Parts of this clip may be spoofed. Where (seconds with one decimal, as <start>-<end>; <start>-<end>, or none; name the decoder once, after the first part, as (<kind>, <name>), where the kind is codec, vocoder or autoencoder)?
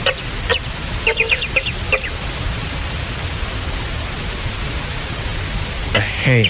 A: none